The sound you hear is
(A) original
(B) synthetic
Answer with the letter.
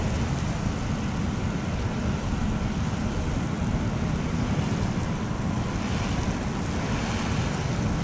A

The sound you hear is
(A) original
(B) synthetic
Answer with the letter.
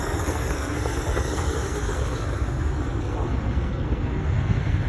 B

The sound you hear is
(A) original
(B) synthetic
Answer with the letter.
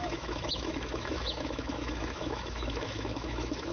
B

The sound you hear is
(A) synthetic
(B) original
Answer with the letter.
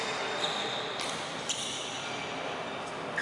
B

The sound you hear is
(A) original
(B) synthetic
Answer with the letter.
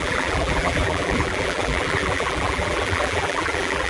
B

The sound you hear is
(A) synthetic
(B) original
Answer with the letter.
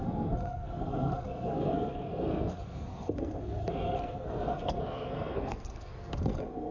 A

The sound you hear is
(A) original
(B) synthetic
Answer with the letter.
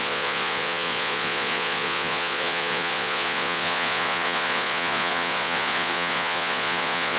B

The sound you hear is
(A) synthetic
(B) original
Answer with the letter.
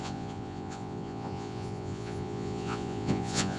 A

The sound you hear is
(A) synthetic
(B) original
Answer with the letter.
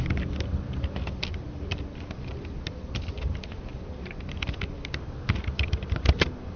B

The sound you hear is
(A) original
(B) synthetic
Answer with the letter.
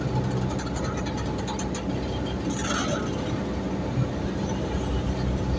A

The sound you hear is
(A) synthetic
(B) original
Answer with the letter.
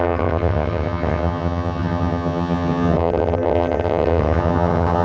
A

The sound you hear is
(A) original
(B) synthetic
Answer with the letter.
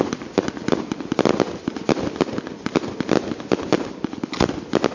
A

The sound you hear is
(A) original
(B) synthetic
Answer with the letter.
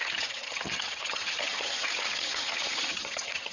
B